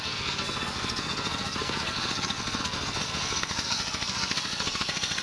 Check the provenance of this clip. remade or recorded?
remade